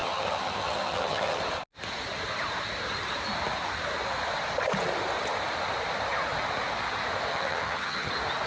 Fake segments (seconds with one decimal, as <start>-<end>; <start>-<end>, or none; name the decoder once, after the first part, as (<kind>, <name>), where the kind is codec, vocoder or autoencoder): 0.0-1.4 (vocoder, HiFi-GAN); 7.3-8.1